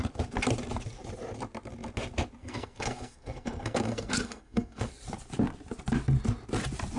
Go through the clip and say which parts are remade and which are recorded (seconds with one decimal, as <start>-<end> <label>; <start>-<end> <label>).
0.0-2.4 recorded; 2.4-4.9 remade; 4.9-7.0 recorded